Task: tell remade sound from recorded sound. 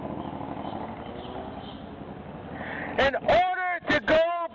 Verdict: recorded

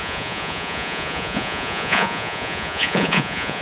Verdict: remade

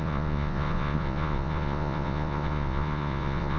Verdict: remade